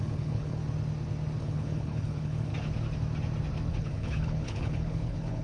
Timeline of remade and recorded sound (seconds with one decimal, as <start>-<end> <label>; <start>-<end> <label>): 0.0-0.6 remade; 0.6-1.4 recorded; 1.4-2.5 remade; 2.5-3.7 recorded; 3.7-5.4 remade

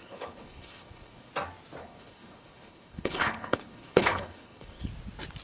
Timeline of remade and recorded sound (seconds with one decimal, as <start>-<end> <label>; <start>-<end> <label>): 0.0-1.3 remade; 1.3-1.8 recorded; 1.8-4.9 remade; 4.9-5.4 recorded